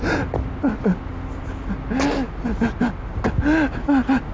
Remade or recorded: recorded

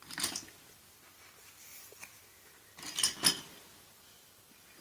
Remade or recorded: recorded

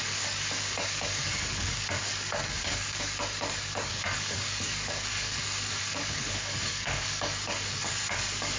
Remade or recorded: remade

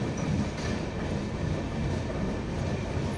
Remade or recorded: recorded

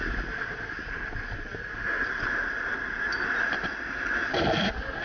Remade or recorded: recorded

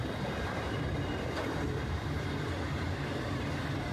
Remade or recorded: remade